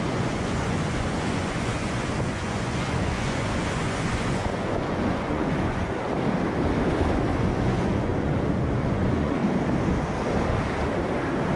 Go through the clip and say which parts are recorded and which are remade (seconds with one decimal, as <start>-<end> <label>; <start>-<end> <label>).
0.0-5.9 remade; 5.9-7.1 recorded; 7.1-9.4 remade; 9.4-11.6 recorded